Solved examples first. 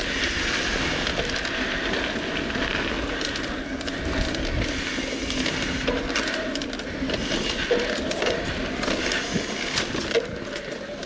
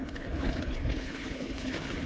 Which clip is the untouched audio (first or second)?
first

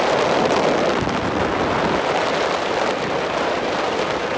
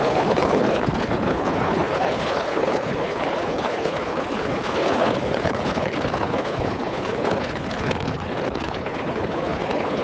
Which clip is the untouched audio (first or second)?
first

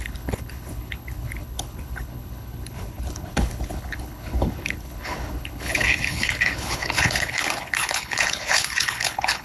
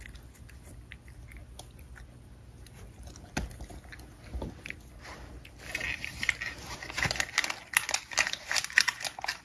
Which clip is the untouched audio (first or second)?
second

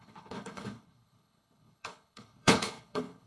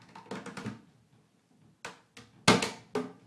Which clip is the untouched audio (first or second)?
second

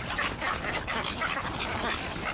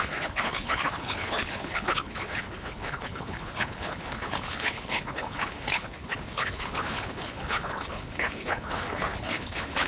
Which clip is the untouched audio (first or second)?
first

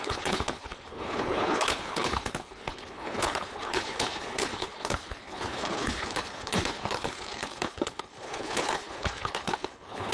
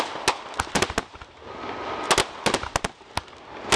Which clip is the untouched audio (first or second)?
second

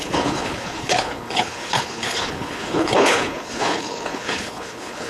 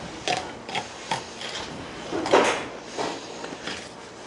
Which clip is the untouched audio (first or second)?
second